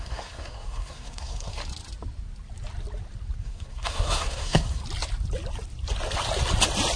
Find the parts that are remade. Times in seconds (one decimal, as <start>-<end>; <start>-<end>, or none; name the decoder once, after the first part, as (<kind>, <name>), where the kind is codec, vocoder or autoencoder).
0.0-1.6 (codec, SNAC); 3.4-4.8